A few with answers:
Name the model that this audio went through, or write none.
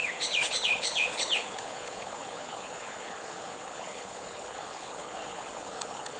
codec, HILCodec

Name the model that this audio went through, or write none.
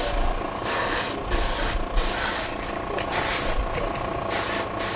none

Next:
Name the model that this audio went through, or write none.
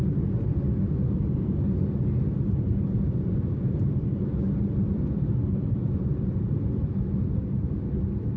none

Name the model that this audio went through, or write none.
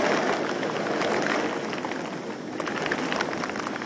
none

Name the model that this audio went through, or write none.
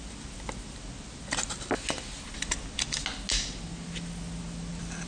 none